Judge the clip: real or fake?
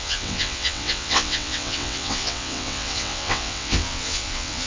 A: fake